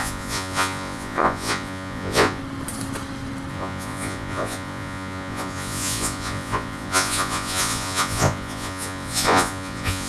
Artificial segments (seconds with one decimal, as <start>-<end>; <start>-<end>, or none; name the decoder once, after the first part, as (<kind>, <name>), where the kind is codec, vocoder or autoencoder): 0.0-2.4 (vocoder, Vocos); 3.5-10.1